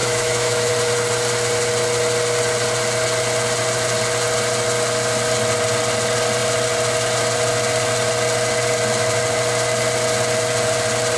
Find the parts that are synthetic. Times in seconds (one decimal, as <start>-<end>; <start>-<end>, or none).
0.0-0.7